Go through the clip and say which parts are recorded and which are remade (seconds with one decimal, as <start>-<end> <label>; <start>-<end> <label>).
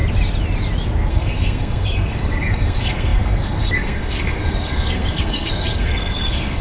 0.0-1.1 recorded; 1.1-6.6 remade